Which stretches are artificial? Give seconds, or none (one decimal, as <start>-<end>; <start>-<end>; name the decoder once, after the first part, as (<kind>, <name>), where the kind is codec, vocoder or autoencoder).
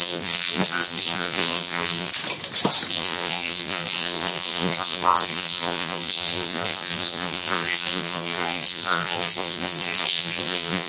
0.0-2.1 (vocoder, BigVGAN v2); 2.9-10.9